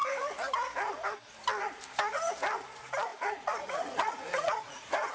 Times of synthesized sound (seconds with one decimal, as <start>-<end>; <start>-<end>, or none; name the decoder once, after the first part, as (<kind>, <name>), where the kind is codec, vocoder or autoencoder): 3.1-5.1 (vocoder, Vocos)